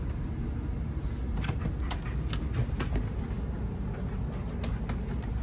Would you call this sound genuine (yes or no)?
yes